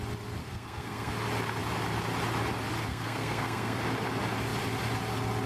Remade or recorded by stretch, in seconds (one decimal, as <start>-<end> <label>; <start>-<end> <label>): 0.0-0.4 recorded; 0.4-1.1 remade; 1.1-2.9 recorded; 2.9-3.8 remade; 3.8-5.5 recorded